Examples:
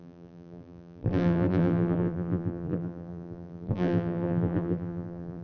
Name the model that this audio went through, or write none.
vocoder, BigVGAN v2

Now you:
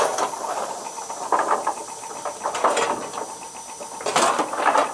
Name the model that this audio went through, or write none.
none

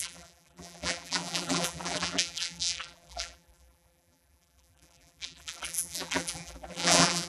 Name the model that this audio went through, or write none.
vocoder, BigVGAN v2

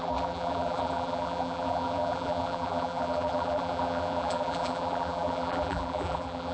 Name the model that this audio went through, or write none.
vocoder, BigVGAN v2